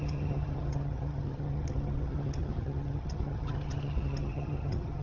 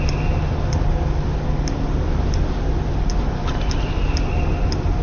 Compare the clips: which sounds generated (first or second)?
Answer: first